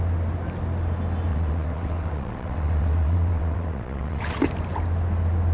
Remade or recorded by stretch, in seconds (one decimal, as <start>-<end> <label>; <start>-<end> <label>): 0.0-1.3 recorded; 1.3-4.4 remade; 4.4-5.5 recorded